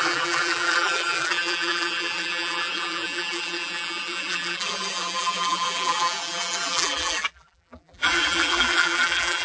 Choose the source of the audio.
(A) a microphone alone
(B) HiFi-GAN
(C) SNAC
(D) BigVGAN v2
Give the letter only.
D